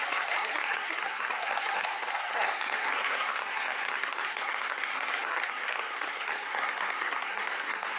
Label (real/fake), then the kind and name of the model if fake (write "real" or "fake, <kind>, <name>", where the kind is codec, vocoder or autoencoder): fake, codec, SNAC